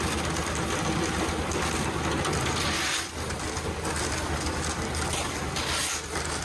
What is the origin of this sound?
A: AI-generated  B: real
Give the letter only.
B